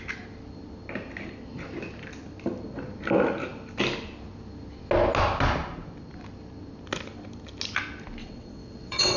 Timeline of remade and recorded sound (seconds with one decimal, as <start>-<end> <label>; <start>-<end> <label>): 0.0-8.2 recorded; 8.2-9.2 remade